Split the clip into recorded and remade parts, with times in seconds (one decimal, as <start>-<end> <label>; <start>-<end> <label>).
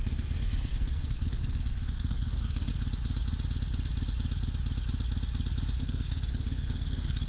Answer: 0.0-2.7 remade; 2.7-5.8 recorded; 5.8-7.3 remade